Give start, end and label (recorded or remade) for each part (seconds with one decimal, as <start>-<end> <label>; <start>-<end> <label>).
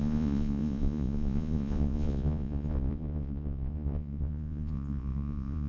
0.0-5.7 remade